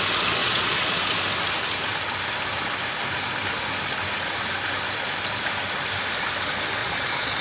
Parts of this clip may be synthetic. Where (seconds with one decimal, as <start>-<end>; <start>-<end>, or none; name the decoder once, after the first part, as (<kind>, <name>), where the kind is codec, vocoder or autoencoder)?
0.4-1.0 (vocoder, Vocos); 6.8-7.4